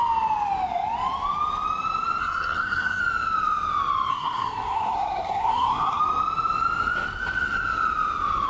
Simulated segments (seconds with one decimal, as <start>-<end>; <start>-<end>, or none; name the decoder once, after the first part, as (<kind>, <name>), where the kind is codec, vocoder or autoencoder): 2.2-3.0 (codec, SNAC); 4.1-6.0